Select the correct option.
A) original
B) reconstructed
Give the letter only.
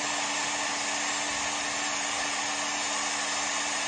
A